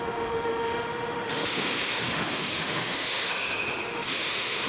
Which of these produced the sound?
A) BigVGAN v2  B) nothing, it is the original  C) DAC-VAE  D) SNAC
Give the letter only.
C